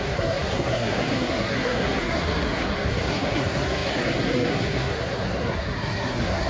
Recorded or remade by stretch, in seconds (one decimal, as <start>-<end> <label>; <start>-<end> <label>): 0.0-6.5 remade